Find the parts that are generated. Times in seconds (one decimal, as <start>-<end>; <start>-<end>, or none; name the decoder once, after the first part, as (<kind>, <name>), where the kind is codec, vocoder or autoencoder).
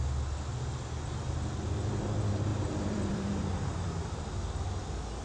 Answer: 2.5-4.2 (vocoder, BigVGAN v2)